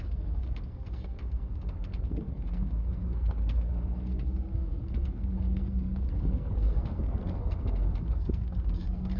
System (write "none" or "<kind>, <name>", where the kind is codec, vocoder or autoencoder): codec, SNAC